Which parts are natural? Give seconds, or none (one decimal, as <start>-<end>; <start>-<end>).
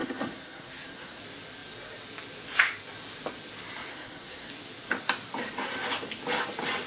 1.2-3.9; 4.5-6.9